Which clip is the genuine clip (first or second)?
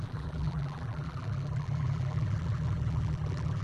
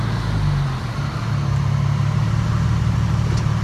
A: second